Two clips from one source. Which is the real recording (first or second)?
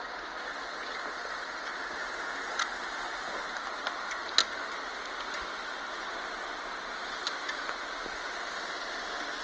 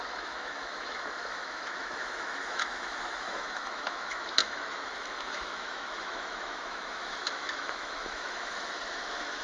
first